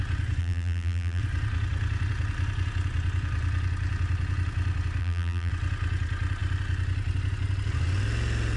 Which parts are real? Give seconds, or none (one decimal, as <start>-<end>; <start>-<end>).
0.0-0.4; 1.2-5.0; 5.5-8.6